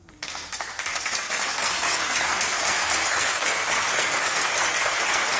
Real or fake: fake